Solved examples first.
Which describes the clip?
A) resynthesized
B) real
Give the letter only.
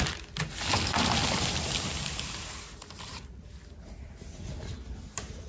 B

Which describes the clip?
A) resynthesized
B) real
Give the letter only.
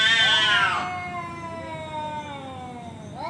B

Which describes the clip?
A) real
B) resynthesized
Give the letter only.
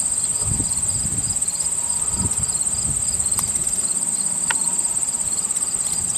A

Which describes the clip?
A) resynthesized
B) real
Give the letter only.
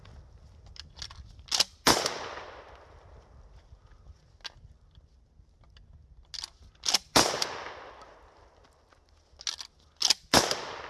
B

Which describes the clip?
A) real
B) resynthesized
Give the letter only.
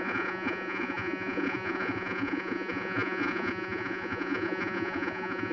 B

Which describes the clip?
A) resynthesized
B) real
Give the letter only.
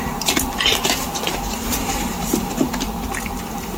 A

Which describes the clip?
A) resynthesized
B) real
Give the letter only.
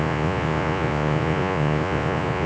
A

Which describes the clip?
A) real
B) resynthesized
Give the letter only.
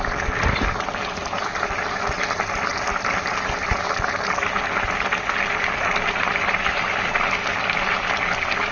A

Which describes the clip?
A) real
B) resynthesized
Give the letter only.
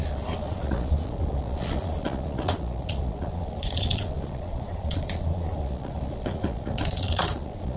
B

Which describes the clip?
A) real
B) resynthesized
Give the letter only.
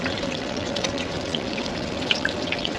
B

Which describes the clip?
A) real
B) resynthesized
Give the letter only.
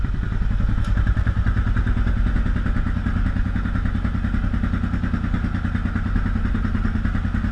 A